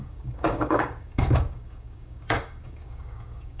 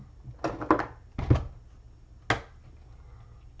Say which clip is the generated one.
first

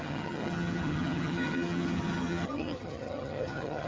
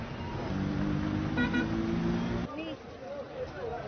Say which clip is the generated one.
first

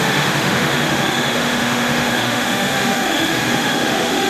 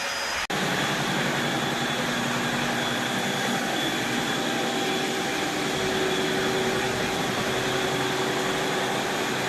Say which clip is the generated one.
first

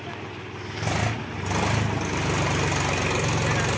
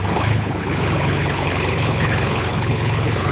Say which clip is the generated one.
second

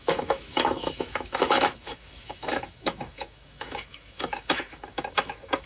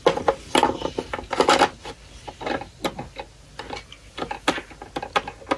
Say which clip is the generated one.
first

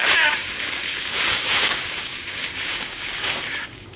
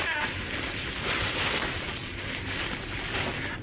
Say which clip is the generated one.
first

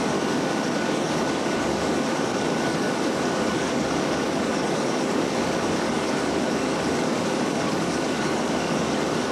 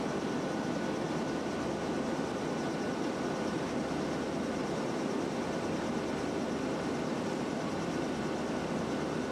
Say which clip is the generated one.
first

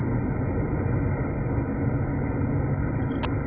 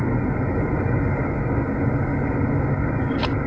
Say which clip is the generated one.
second